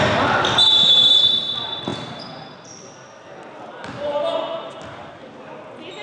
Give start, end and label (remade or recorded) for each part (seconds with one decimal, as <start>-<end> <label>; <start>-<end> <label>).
0.0-6.0 recorded